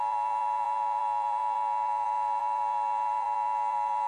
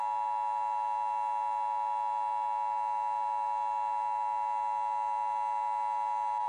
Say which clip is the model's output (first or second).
first